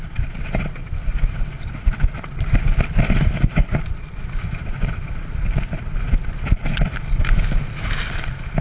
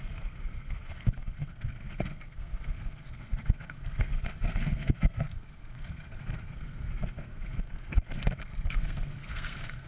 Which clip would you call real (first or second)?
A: first